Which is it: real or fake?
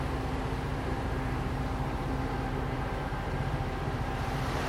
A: fake